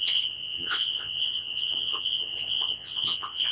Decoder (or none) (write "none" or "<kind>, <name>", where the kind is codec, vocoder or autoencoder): vocoder, Vocos